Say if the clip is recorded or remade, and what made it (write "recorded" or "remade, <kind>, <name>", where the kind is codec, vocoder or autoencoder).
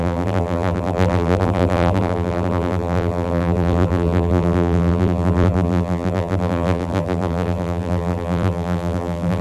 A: remade, vocoder, BigVGAN v2